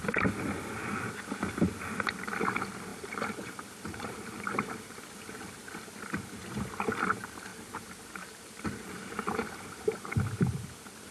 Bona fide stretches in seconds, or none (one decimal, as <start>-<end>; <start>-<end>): 0.0-2.9; 5.0-7.5; 10.1-11.1